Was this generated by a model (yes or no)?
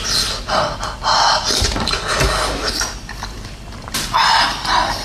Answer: no